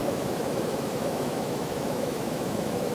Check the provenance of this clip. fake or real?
fake